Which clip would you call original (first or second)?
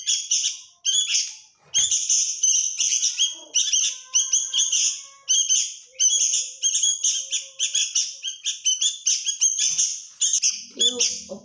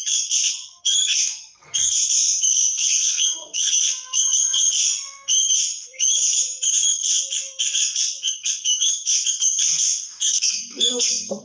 first